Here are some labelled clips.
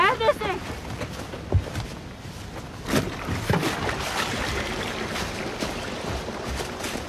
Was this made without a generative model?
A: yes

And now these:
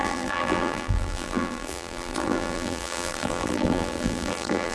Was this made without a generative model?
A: no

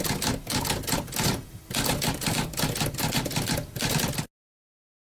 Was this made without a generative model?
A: yes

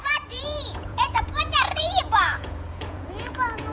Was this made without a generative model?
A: no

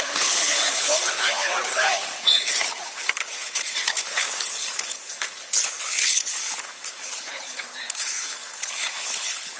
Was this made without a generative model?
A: no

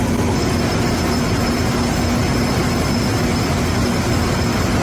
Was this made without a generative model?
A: yes